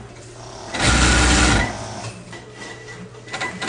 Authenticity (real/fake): real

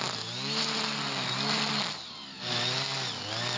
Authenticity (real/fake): real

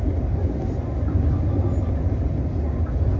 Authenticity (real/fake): real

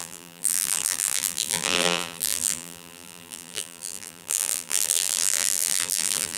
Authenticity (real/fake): fake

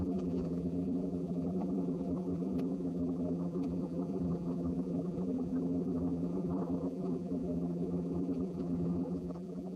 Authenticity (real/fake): fake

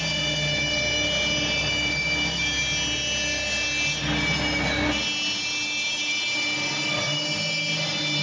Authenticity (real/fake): real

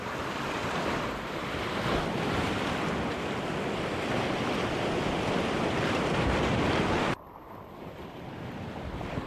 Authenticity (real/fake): fake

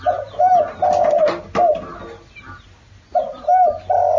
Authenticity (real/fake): real